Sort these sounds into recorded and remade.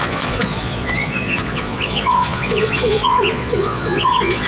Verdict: remade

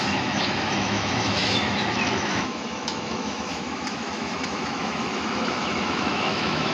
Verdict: remade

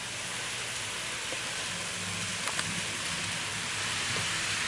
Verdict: recorded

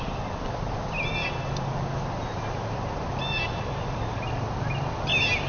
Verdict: recorded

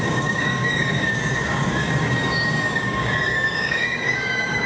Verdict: remade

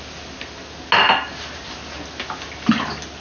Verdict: recorded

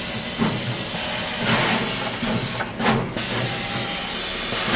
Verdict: recorded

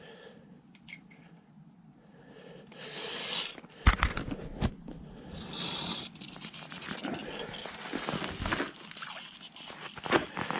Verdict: recorded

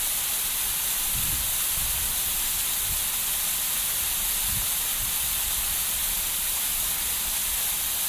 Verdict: recorded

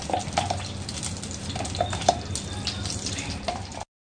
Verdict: recorded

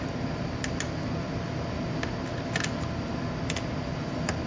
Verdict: recorded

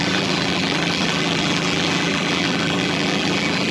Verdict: remade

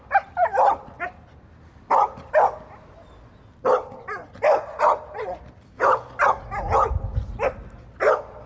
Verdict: recorded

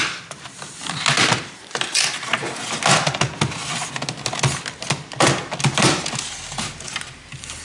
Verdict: recorded